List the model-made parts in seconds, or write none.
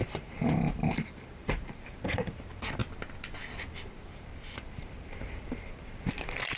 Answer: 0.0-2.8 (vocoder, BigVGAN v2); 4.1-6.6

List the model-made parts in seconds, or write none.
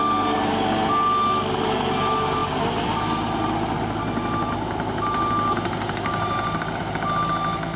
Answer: none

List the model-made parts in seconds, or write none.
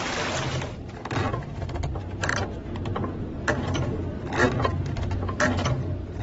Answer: 1.3-4.0 (vocoder, BigVGAN v2)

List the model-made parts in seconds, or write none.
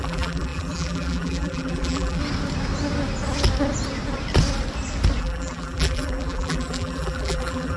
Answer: 0.0-2.2 (vocoder, BigVGAN v2); 5.2-7.8